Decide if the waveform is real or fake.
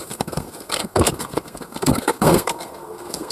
fake